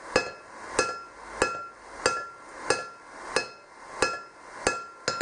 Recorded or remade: recorded